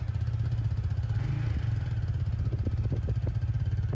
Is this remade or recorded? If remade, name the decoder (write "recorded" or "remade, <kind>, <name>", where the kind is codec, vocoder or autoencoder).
recorded